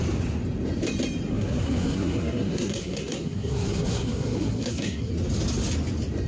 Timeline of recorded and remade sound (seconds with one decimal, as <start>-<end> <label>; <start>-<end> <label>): 0.0-1.3 recorded; 1.3-5.1 remade; 5.1-6.3 recorded